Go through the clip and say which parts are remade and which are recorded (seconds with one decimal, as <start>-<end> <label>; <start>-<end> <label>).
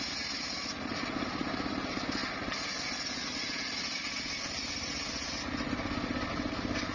0.0-6.9 recorded